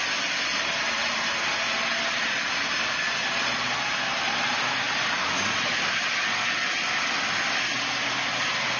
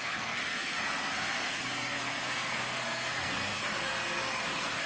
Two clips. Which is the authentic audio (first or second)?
first